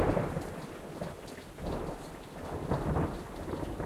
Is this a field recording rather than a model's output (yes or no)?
yes